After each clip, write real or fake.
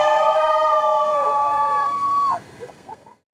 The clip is fake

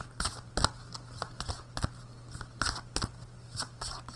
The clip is real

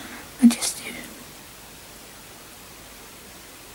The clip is real